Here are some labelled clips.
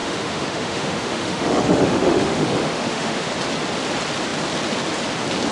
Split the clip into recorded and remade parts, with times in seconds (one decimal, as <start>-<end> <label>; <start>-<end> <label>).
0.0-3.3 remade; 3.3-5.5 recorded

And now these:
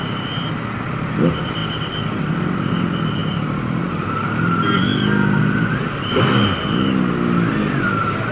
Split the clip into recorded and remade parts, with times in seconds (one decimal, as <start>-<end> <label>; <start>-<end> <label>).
0.0-8.3 recorded

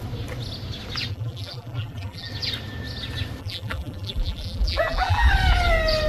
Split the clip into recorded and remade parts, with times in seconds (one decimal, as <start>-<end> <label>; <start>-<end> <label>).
0.0-1.1 recorded; 1.1-2.3 remade; 2.3-3.4 recorded; 3.4-5.3 remade; 5.3-6.1 recorded

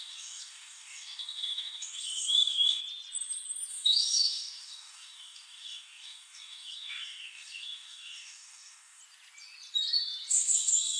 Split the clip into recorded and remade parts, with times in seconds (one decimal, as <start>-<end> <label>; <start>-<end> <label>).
0.0-2.8 remade; 2.8-3.7 recorded; 3.7-9.0 remade; 9.0-10.3 recorded; 10.3-11.0 remade

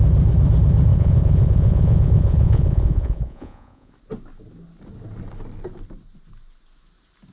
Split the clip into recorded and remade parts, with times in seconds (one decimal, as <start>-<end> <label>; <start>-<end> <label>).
0.0-0.9 recorded; 0.9-3.9 remade; 3.9-7.3 recorded

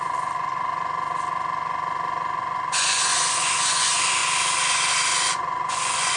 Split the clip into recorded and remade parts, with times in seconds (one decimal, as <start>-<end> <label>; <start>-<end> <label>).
0.0-0.7 remade; 0.7-2.4 recorded; 2.4-4.2 remade; 4.2-5.3 recorded; 5.3-6.2 remade

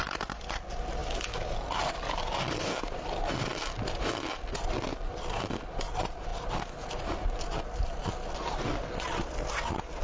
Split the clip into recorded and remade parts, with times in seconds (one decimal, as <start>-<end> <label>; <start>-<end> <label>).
0.0-10.0 recorded